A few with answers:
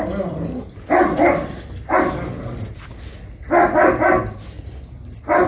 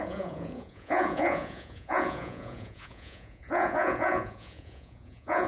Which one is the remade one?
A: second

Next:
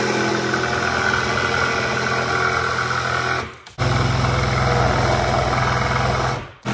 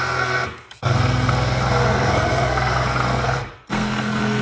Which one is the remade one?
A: second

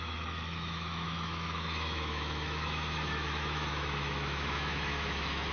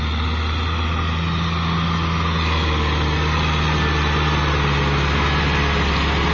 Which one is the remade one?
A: first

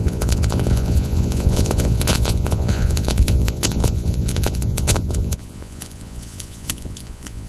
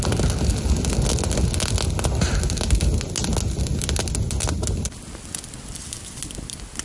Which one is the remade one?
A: first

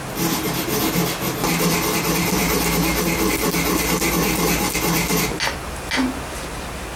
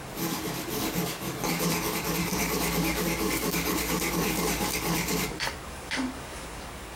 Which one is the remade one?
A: second